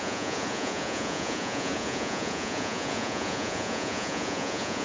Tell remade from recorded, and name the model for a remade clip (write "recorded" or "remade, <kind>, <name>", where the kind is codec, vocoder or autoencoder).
remade, vocoder, Vocos